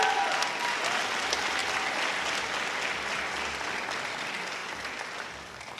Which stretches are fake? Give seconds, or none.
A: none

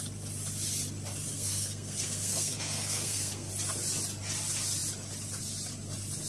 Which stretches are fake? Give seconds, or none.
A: 1.3-3.5 (codec, SNAC)

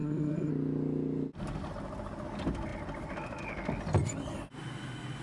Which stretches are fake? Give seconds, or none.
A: 0.0-0.5 (codec, SNAC)

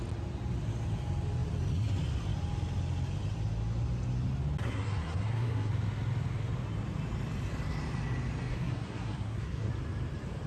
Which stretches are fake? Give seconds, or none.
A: 4.6-5.7 (codec, SNAC); 8.5-9.7

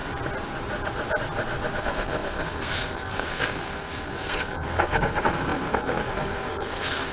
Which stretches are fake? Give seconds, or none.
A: 1.8-7.1 (codec, SNAC)

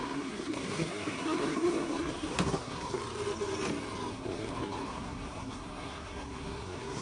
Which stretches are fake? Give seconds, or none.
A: 0.0-3.0 (codec, SNAC); 4.1-7.0